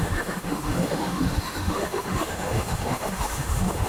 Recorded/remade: remade